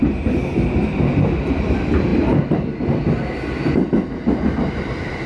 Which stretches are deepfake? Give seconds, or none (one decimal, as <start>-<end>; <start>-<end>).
none